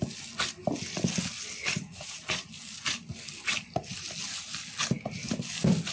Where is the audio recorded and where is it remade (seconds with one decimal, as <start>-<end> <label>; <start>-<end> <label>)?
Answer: 0.0-1.6 recorded; 1.6-2.5 remade; 2.5-5.9 recorded